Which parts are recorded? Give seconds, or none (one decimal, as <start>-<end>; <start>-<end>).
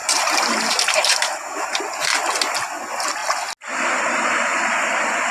1.8-5.3